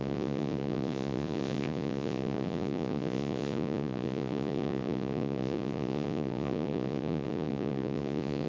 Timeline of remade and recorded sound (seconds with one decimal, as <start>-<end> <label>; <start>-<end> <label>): 0.0-8.5 remade